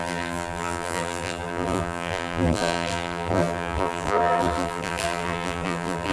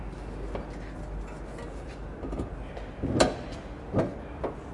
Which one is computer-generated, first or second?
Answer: first